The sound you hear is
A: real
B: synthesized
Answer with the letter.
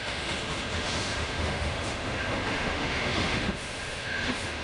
B